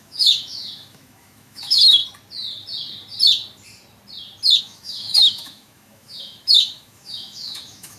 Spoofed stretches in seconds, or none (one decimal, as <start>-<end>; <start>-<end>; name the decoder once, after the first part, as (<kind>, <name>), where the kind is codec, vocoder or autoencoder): 0.0-2.0 (autoencoder, DAC-VAE); 4.6-8.0